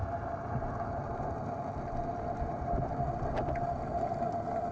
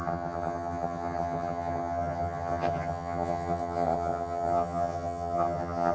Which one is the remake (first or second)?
second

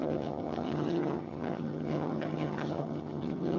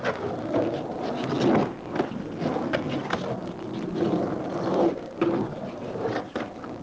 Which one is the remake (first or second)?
first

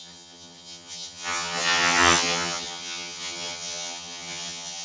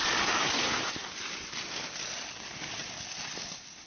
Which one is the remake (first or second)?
first